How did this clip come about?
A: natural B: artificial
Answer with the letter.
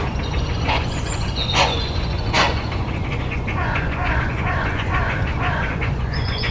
B